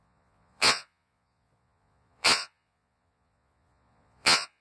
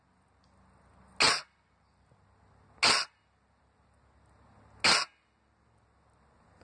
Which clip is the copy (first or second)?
first